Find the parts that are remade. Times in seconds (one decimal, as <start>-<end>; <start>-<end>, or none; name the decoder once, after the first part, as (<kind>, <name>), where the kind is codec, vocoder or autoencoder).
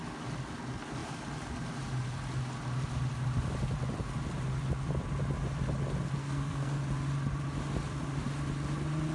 6.2-6.8 (codec, SNAC)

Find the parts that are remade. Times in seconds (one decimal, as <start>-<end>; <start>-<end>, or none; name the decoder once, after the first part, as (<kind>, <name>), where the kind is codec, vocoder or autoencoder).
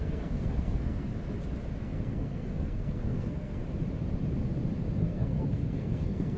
0.0-1.1 (codec, SNAC); 1.8-3.6; 5.0-6.4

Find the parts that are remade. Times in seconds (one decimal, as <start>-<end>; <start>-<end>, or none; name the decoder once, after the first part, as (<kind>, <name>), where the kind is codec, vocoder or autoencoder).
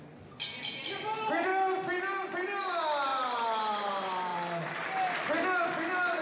none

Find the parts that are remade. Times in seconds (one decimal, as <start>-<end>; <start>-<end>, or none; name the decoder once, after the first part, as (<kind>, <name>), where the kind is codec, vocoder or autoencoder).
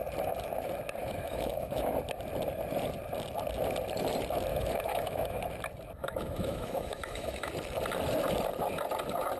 1.0-1.9 (autoencoder, DAC-VAE); 4.5-5.4; 6.0-7.5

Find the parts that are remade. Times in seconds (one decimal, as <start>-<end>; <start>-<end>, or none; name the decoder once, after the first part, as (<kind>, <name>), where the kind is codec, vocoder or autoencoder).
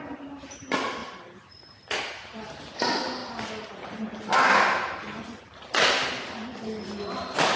none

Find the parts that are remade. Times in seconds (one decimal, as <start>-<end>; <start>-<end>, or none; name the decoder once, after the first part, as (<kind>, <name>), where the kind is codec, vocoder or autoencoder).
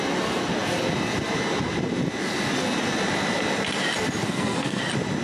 4.2-4.8 (codec, SNAC)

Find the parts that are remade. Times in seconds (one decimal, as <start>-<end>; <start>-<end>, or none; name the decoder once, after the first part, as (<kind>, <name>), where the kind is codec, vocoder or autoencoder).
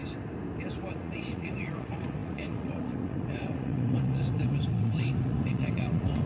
0.9-6.3 (vocoder, Vocos)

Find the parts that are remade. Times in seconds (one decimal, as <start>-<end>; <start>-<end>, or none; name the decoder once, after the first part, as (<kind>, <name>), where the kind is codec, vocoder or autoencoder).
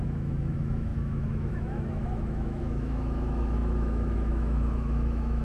0.0-5.4 (autoencoder, DAC-VAE)